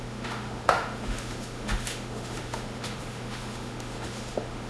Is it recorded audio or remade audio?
remade